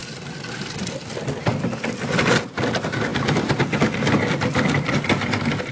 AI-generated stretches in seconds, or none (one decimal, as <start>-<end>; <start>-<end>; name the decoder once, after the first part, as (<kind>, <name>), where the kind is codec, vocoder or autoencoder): none